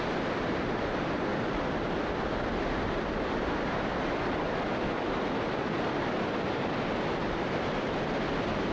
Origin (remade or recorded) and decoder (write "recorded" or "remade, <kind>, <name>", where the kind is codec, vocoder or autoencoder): recorded